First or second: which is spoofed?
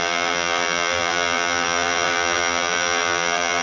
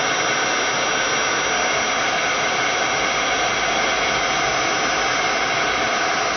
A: first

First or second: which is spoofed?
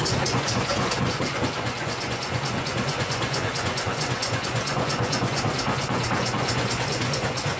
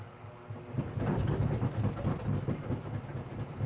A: first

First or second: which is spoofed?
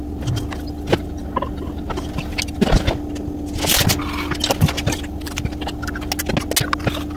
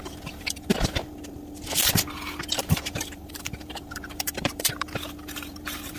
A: second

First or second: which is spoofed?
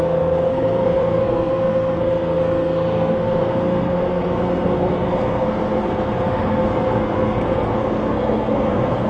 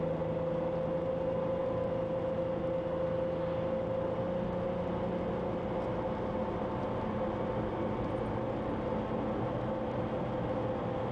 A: first